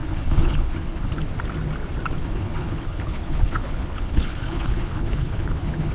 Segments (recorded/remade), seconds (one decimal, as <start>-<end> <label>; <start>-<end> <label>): 0.0-1.1 remade; 1.1-2.2 recorded; 2.2-5.9 remade